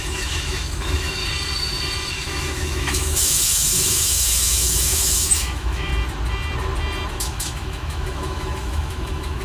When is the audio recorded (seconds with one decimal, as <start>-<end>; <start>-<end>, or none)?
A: 1.2-2.1; 5.9-7.1